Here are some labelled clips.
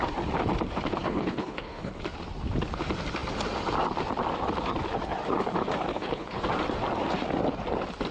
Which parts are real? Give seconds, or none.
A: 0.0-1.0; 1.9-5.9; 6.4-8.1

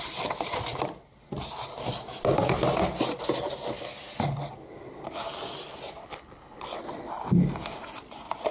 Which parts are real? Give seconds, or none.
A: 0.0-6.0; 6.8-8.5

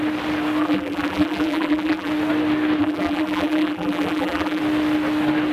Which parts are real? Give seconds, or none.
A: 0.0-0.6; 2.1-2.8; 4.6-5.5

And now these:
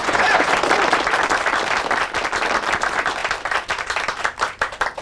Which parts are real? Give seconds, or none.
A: 0.5-5.0

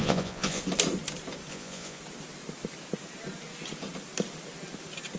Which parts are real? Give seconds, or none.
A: 0.6-1.5; 2.0-5.2